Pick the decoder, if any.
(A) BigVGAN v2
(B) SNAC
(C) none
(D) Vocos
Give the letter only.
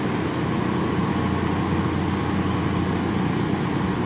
C